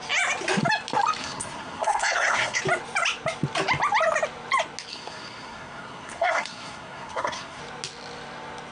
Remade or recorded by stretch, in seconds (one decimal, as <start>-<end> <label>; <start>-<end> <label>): 0.0-1.2 recorded; 1.2-2.6 remade; 2.6-4.9 recorded; 4.9-7.6 remade; 7.6-8.7 recorded